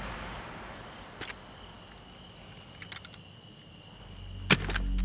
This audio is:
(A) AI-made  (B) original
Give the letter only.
B